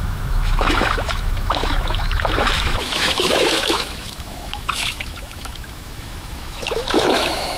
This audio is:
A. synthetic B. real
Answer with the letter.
A